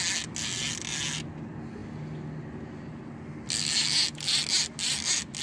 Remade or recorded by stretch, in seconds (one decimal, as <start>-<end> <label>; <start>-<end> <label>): 0.0-5.4 recorded